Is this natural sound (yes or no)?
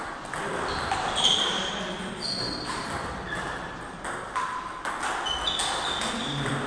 yes